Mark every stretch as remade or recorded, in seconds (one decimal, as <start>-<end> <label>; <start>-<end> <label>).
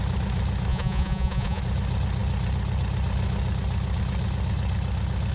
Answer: 0.0-0.7 recorded; 0.7-1.6 remade; 1.6-5.3 recorded